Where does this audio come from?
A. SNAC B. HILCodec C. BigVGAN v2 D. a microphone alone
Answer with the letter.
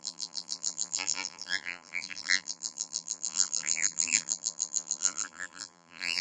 C